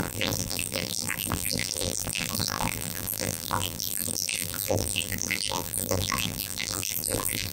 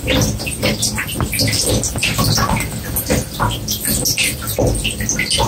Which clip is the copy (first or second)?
first